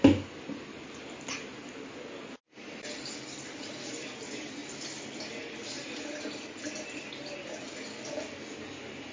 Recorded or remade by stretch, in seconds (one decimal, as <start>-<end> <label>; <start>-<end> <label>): 0.0-9.1 recorded